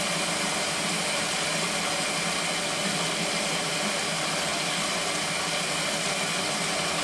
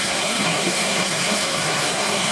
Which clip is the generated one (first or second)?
second